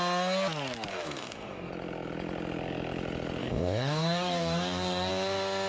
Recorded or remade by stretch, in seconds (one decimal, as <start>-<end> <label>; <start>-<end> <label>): 0.0-0.9 recorded; 0.9-1.7 remade; 1.7-3.4 recorded; 3.4-5.1 remade; 5.1-5.7 recorded